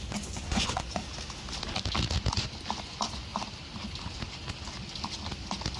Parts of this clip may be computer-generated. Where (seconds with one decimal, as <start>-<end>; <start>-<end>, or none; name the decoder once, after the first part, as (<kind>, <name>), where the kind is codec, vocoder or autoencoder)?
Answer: 0.0-1.0 (vocoder, Vocos); 2.8-3.3